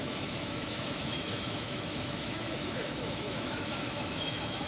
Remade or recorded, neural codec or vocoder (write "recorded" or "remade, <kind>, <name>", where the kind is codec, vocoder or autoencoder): remade, autoencoder, DAC-VAE